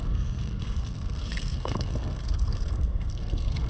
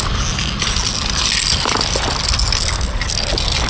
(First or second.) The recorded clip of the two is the second